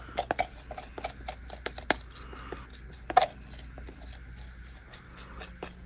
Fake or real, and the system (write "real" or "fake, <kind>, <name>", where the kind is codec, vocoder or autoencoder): real